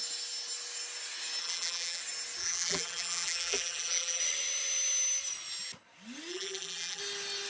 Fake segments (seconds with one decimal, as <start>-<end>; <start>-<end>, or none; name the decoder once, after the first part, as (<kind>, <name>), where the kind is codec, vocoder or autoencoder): 1.4-2.0 (vocoder, BigVGAN v2); 2.4-4.2; 6.3-7.0